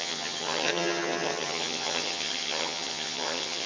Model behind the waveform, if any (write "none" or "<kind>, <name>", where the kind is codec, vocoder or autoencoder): vocoder, HiFi-GAN